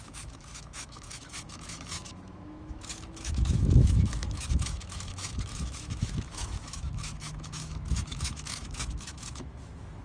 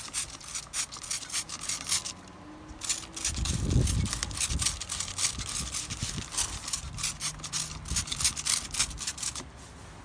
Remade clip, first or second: first